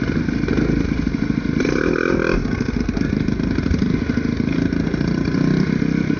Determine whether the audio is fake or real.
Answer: real